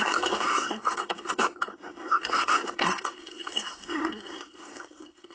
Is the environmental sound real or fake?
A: fake